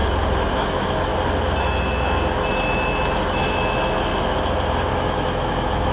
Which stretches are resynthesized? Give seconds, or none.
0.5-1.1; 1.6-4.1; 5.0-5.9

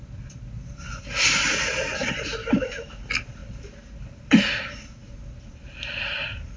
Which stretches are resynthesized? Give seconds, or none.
2.4-3.0

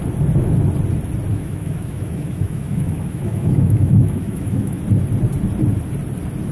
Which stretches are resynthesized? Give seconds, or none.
1.3-4.8

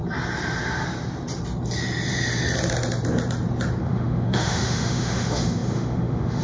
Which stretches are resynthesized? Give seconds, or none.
3.8-6.4

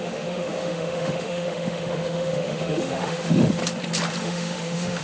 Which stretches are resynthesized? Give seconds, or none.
0.0-3.6; 4.2-5.0